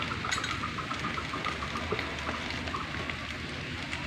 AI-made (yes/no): no